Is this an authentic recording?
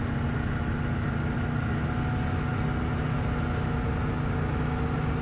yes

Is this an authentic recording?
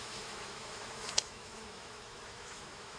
no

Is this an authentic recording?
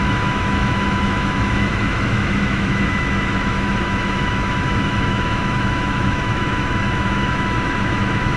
no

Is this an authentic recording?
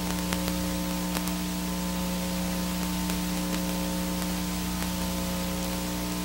yes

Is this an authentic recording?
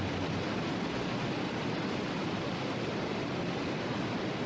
yes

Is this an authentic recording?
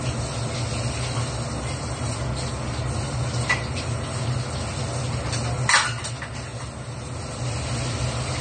yes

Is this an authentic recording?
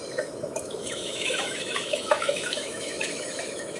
no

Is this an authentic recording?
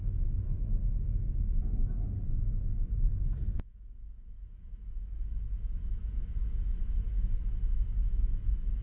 no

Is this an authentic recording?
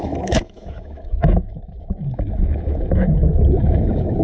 no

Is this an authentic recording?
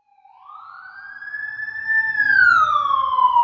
yes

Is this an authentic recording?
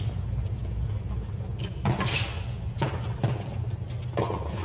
yes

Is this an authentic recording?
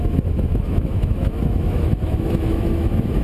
no